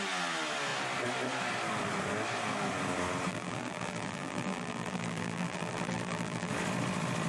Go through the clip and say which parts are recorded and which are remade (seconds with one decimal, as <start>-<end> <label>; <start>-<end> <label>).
0.0-3.3 recorded; 3.3-6.5 remade; 6.5-7.3 recorded

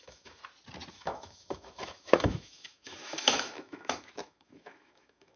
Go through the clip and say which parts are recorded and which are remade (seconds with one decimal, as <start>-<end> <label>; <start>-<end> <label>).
0.0-0.4 remade; 0.4-0.9 recorded; 0.9-5.4 remade

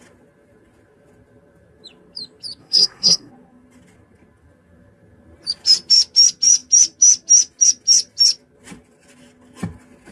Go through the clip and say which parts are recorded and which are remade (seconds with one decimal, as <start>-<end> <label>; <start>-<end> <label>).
0.0-2.6 recorded; 2.6-3.3 remade; 3.3-10.1 recorded

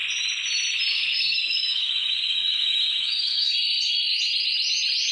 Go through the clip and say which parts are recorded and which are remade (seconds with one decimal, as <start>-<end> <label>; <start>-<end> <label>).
0.0-0.9 recorded; 0.9-3.5 remade; 3.5-5.1 recorded

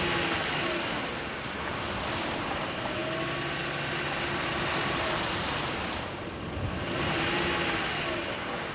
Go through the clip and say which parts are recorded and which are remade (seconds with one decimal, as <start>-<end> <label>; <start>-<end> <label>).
0.0-8.7 recorded

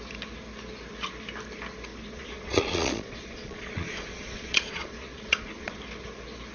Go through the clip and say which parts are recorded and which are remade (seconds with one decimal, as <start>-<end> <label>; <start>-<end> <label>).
0.0-1.9 recorded; 1.9-5.8 remade; 5.8-6.5 recorded